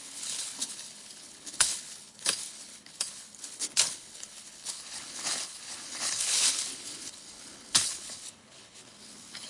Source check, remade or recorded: remade